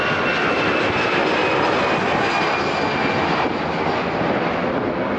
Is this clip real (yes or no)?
yes